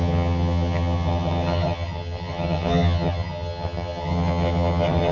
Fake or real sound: fake